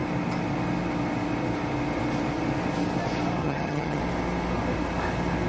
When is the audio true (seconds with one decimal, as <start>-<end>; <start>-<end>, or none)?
0.0-3.4; 4.0-5.5